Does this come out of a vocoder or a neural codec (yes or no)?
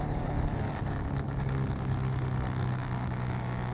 yes